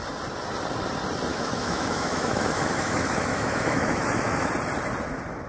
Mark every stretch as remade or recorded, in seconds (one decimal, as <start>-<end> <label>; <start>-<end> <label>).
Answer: 0.0-1.3 recorded; 1.3-4.5 remade; 4.5-5.5 recorded